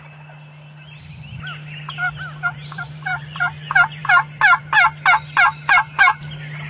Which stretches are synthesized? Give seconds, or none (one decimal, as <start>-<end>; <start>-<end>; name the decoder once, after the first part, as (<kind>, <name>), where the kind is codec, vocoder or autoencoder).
2.6-3.4 (vocoder, BigVGAN v2); 4.0-4.6

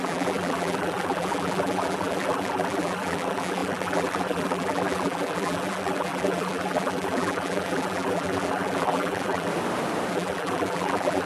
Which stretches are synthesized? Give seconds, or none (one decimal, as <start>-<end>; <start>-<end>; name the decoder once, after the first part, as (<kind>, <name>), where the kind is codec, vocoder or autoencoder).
0.0-9.5 (vocoder, BigVGAN v2); 10.1-11.3

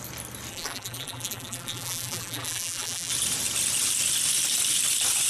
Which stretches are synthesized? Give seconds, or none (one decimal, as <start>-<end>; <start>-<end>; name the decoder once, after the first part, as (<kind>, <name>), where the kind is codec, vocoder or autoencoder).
0.5-3.1 (vocoder, BigVGAN v2)

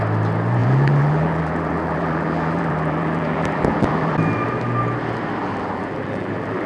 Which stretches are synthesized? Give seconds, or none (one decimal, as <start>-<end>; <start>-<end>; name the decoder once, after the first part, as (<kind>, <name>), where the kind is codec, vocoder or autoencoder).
0.6-4.1 (vocoder, BigVGAN v2); 5.4-6.7

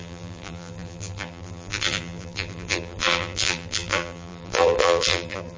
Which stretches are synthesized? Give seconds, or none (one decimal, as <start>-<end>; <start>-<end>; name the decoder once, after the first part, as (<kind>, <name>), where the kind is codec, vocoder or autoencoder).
0.0-5.6 (vocoder, BigVGAN v2)

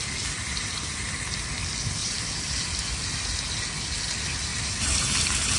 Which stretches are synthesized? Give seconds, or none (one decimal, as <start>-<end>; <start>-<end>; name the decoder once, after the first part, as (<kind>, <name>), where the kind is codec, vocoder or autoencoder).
2.0-2.8 (vocoder, BigVGAN v2); 4.5-5.6

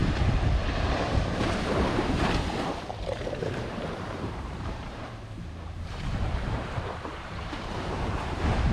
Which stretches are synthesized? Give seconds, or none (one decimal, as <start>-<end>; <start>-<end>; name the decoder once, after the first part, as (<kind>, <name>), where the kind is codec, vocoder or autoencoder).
0.7-8.7 (vocoder, BigVGAN v2)

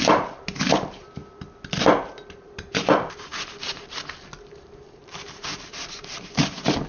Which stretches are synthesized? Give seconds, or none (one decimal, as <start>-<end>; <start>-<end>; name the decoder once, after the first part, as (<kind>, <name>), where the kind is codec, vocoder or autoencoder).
0.0-1.2 (vocoder, BigVGAN v2); 2.0-3.3; 4.9-6.9